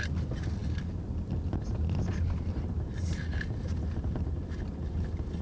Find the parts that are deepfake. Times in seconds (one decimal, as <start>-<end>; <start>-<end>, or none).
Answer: none